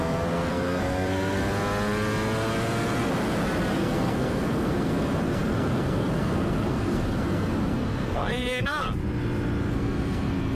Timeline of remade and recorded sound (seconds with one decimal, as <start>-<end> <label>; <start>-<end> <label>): 0.0-1.4 remade; 1.4-3.7 recorded; 3.7-9.0 remade; 9.0-9.7 recorded; 9.7-10.5 remade